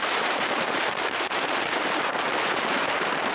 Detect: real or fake fake